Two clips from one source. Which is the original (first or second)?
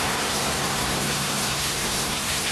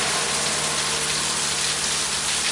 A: second